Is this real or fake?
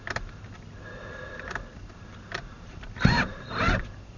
real